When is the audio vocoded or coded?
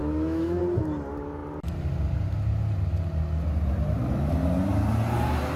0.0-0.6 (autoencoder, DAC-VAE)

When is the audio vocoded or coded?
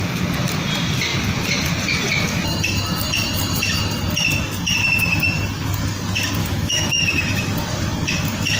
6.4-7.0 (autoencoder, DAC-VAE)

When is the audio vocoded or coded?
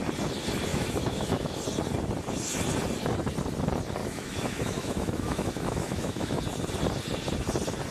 0.7-1.5 (autoencoder, DAC-VAE); 4.0-6.4